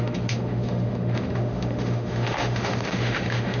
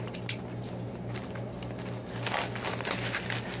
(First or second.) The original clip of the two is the second